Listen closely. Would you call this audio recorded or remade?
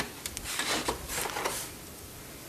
recorded